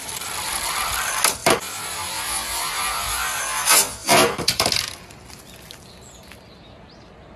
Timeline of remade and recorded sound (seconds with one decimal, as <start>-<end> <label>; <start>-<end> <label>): 0.0-0.5 remade; 0.5-1.4 recorded; 1.4-3.4 remade; 3.4-4.0 recorded; 4.0-5.0 remade; 5.0-7.4 recorded